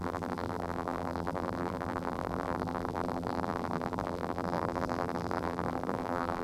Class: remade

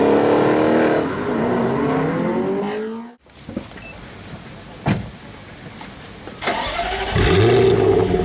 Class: recorded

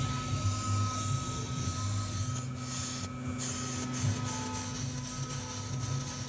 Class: recorded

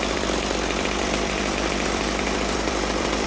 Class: remade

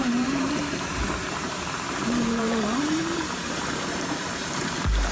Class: remade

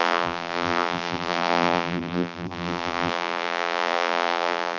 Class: remade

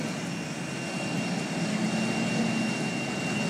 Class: recorded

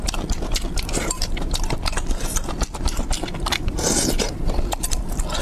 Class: remade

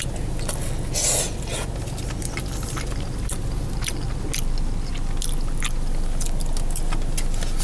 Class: recorded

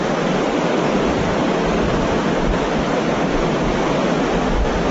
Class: recorded